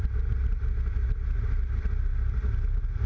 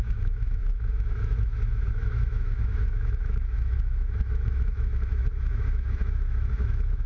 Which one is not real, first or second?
second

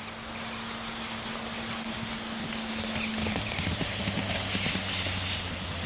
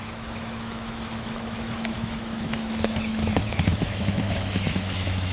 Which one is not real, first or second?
second